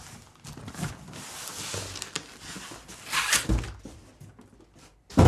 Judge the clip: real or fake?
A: real